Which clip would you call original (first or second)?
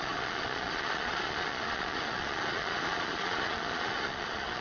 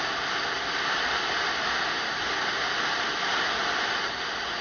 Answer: second